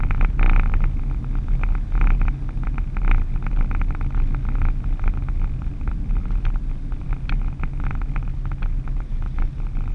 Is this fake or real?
real